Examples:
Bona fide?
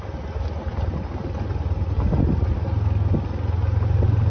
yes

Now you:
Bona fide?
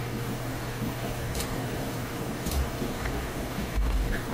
no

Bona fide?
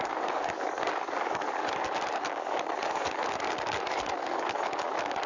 no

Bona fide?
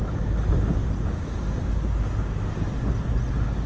yes